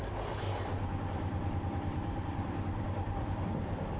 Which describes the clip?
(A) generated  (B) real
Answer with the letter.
A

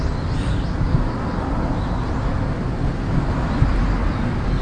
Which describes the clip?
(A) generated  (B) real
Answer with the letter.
B